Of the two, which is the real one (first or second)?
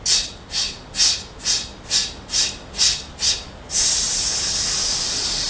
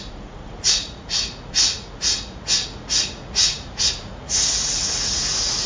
first